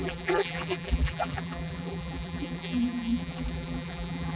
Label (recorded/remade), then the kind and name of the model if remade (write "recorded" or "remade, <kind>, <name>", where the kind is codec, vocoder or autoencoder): remade, vocoder, BigVGAN v2